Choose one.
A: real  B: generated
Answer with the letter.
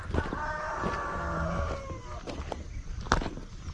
A